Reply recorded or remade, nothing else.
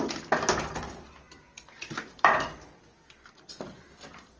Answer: recorded